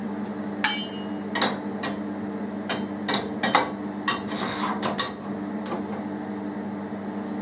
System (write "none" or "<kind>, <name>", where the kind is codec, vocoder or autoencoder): none